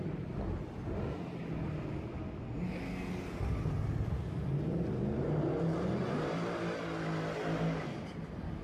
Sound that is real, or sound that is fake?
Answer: real